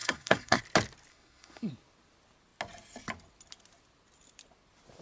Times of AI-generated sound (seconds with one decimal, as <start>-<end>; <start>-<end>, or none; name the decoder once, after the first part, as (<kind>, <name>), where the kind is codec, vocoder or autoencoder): 0.0-0.6 (codec, SNAC); 1.1-1.7